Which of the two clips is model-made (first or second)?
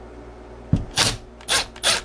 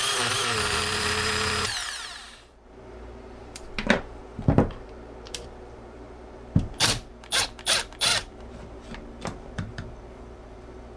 second